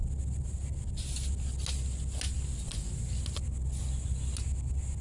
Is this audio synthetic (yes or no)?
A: no